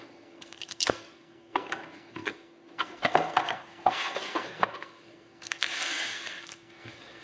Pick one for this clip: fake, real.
fake